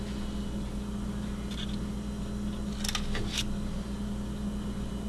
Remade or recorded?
recorded